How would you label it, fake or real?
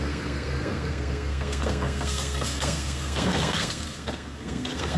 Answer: fake